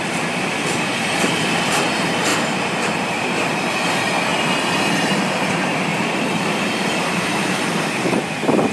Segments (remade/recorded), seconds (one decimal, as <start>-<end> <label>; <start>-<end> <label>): 0.0-2.3 recorded; 2.3-3.7 remade; 3.7-5.9 recorded; 5.9-8.2 remade; 8.2-8.7 recorded